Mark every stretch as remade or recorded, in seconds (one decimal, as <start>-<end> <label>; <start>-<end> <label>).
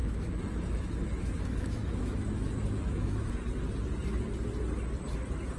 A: 0.0-3.3 remade; 3.3-5.6 recorded